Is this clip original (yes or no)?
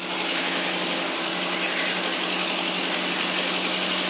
yes